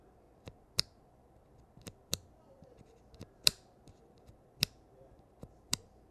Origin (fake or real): fake